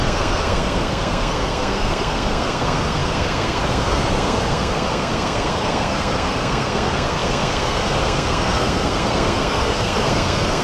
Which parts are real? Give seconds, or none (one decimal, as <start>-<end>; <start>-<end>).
none